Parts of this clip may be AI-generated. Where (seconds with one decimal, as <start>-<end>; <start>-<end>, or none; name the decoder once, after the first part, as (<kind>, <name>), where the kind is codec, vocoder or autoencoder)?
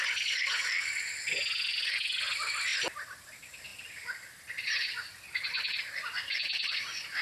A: 2.7-3.2 (vocoder, BigVGAN v2)